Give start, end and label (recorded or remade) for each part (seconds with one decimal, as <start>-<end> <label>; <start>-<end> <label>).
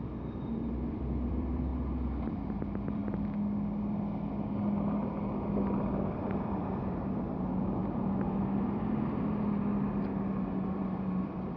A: 0.0-1.7 remade; 1.7-2.3 recorded; 2.3-3.0 remade; 3.0-6.1 recorded; 6.1-7.8 remade; 7.8-10.5 recorded; 10.5-11.6 remade